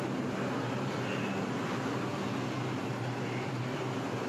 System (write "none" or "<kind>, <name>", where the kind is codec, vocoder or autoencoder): none